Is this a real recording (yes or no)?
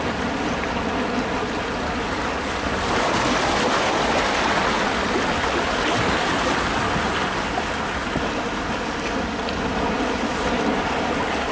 yes